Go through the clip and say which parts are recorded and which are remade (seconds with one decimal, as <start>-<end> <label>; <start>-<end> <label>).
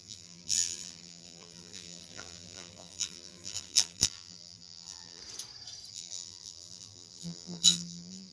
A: 0.0-5.2 remade; 5.2-5.9 recorded; 5.9-8.3 remade